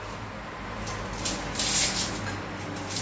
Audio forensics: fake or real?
real